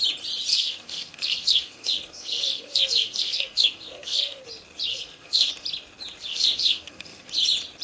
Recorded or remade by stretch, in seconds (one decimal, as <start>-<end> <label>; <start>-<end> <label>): 0.0-0.5 recorded; 0.5-4.4 remade; 4.4-4.9 recorded; 4.9-5.5 remade; 5.5-6.3 recorded; 6.3-7.3 remade; 7.3-7.8 recorded